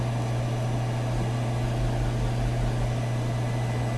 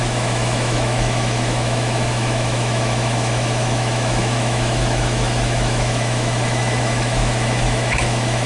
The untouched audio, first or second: first